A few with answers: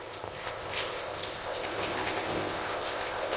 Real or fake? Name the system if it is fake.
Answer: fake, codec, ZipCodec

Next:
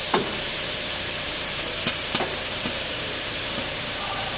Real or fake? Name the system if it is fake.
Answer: fake, vocoder, BigVGAN v2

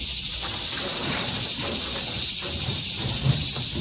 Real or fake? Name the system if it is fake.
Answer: fake, vocoder, BigVGAN v2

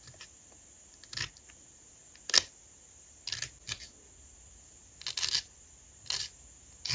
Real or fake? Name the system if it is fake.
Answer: real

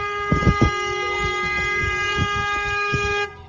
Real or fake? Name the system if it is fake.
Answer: fake, codec, DAC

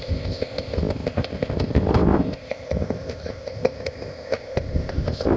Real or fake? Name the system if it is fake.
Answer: fake, codec, ZipCodec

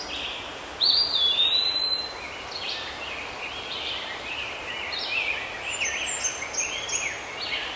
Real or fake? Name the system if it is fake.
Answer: real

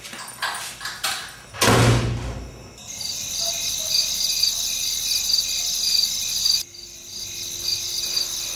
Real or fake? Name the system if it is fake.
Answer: real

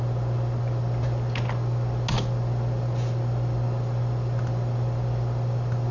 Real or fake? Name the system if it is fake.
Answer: real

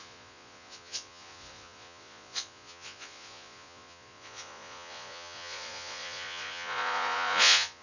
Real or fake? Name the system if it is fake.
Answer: fake, vocoder, Vocos